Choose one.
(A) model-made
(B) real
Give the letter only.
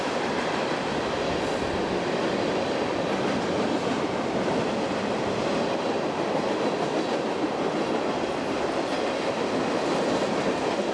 A